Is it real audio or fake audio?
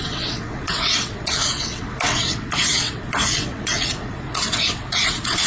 fake